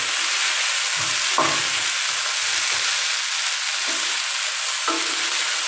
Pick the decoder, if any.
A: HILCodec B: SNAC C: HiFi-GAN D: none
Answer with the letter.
D